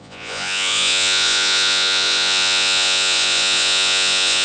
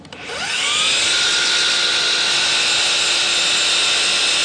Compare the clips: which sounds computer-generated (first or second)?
first